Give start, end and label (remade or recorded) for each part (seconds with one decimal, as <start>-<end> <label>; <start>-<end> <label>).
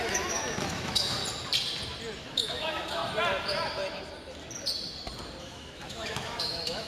0.0-1.2 remade; 1.2-2.2 recorded; 2.2-3.0 remade; 3.0-5.4 recorded; 5.4-6.9 remade